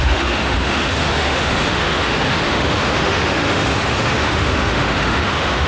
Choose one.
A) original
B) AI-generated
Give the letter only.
B